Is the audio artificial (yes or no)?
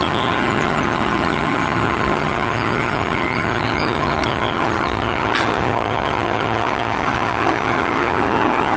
yes